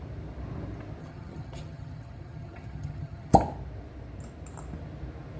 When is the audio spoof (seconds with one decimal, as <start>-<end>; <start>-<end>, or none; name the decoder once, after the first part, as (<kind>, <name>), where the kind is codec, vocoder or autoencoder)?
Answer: 1.0-3.3 (vocoder, HiFi-GAN)